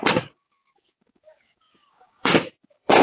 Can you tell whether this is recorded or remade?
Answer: remade